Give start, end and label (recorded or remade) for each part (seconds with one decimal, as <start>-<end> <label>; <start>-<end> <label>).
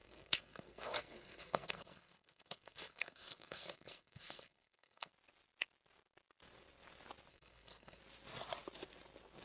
0.0-5.1 remade; 5.1-7.3 recorded; 7.3-8.0 remade; 8.0-9.4 recorded